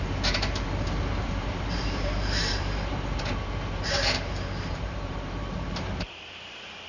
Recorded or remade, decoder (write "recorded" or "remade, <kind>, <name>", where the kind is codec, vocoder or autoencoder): remade, vocoder, BigVGAN v2